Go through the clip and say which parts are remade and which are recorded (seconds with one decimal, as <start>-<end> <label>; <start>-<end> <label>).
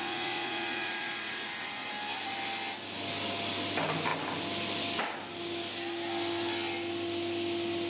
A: 0.0-1.9 remade; 1.9-7.9 recorded